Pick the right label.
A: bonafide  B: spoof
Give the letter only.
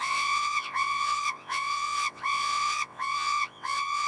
B